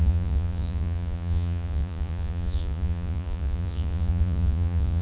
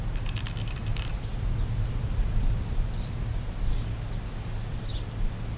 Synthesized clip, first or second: first